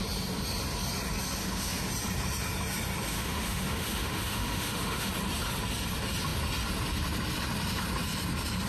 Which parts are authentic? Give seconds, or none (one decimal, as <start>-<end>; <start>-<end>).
0.0-1.4; 1.9-3.1; 5.1-8.7